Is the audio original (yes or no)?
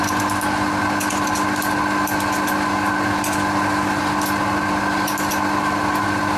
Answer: yes